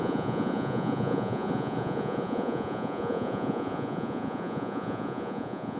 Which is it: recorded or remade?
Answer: remade